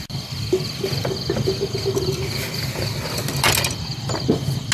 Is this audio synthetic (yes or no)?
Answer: no